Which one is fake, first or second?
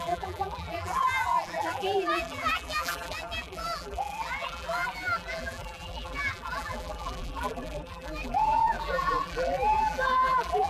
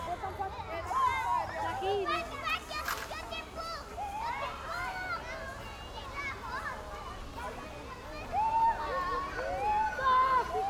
first